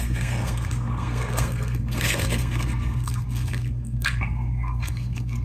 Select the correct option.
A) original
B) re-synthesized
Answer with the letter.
B